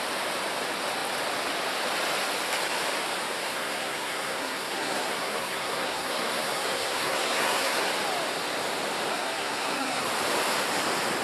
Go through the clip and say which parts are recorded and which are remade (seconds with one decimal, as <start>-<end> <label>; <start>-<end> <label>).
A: 0.0-3.4 recorded; 3.4-7.9 remade; 7.9-9.1 recorded; 9.1-10.0 remade; 10.0-11.2 recorded

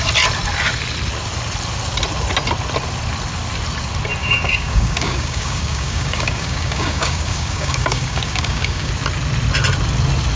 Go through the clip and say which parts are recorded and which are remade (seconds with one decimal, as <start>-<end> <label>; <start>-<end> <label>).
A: 0.0-4.2 recorded; 4.2-8.9 remade; 8.9-10.4 recorded

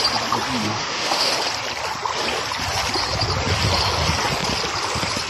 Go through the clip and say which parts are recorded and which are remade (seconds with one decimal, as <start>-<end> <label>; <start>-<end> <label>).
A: 0.0-0.6 recorded; 0.6-1.3 remade; 1.3-5.3 recorded

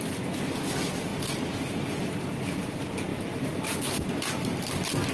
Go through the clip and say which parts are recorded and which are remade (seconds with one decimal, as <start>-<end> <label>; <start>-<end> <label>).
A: 0.0-3.1 recorded; 3.1-4.0 remade; 4.0-5.1 recorded

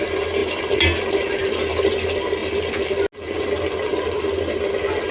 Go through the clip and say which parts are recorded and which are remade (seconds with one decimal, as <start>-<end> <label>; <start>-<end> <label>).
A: 0.0-5.1 recorded

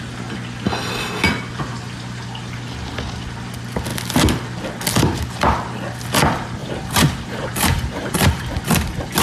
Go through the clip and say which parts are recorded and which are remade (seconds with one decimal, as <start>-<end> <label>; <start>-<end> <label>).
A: 0.0-6.6 recorded; 6.6-8.5 remade; 8.5-9.2 recorded